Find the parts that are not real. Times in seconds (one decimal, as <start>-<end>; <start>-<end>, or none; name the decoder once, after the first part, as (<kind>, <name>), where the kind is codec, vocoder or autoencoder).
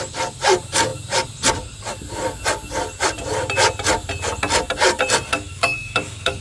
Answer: 5.3-6.4 (codec, DAC)